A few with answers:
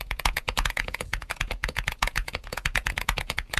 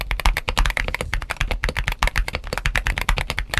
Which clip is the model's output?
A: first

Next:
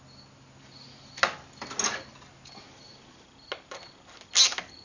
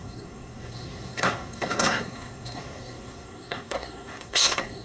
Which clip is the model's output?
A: second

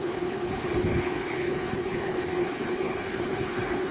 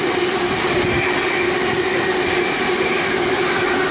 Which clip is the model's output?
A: first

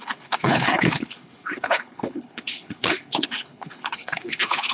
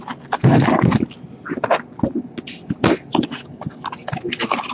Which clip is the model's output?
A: first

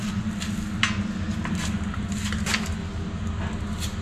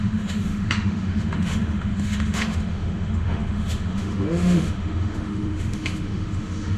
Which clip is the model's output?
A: second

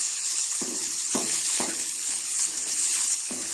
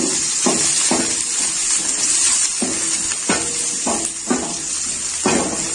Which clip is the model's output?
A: first